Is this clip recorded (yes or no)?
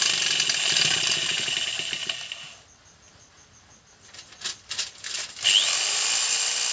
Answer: yes